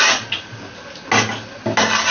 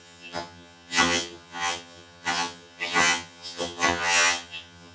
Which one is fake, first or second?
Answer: second